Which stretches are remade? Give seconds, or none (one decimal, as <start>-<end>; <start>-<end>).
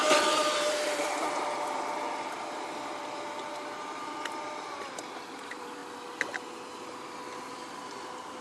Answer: 0.0-5.8; 7.4-8.4